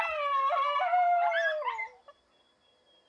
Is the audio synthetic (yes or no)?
no